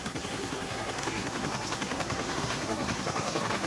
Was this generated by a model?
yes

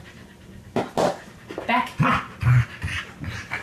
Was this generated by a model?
no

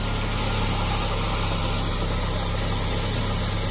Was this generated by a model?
no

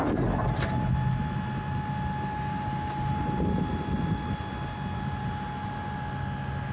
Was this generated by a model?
no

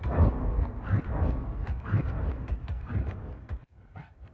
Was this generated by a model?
yes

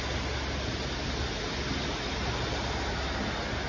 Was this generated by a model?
no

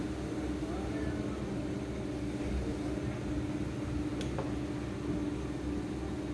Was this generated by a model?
no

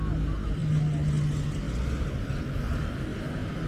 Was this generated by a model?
no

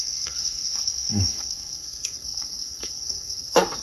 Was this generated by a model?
yes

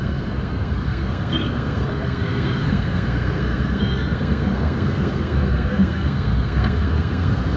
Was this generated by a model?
yes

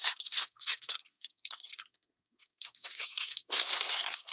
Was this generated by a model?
yes